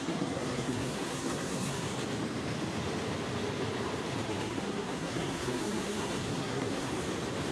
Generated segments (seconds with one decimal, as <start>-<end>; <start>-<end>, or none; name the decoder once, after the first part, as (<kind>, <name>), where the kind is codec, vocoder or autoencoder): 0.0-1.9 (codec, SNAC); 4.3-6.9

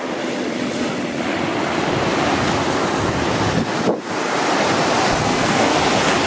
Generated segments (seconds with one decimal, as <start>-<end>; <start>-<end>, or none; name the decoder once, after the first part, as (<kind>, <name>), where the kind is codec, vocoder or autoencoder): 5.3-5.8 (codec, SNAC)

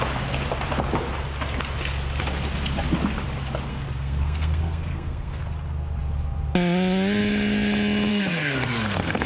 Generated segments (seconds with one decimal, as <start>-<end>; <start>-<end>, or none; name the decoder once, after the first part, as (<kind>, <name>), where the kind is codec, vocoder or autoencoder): 3.7-5.4 (codec, SNAC); 8.1-9.3

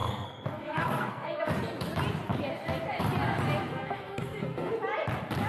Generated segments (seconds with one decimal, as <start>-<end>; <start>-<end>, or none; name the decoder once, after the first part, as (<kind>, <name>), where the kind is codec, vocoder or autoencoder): 0.0-1.4 (codec, SNAC); 3.7-4.7